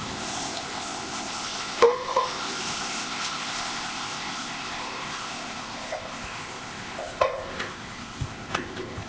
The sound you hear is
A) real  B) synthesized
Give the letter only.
B